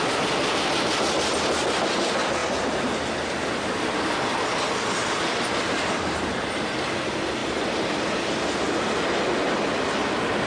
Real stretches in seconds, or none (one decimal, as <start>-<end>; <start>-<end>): 0.0-10.5